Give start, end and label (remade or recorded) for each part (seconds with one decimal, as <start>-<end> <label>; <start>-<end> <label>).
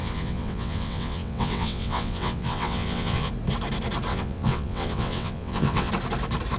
0.0-3.3 remade; 3.3-4.1 recorded; 4.1-5.9 remade; 5.9-6.6 recorded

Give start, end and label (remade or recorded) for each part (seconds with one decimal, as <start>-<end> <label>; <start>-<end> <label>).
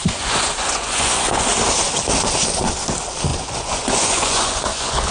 0.0-1.5 remade; 1.5-3.3 recorded; 3.3-5.1 remade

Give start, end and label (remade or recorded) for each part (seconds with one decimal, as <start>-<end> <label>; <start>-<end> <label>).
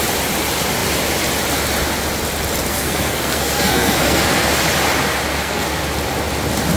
0.0-2.7 recorded; 2.7-4.5 remade; 4.5-5.3 recorded; 5.3-5.8 remade; 5.8-6.8 recorded